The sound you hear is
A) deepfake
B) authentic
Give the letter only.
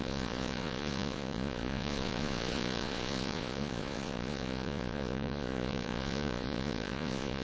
A